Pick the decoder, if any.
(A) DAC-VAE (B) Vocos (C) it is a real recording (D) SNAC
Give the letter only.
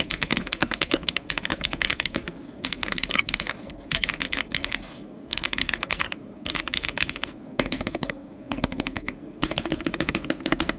D